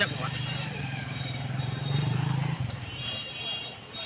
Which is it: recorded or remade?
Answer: remade